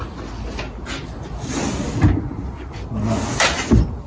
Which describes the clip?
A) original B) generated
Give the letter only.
A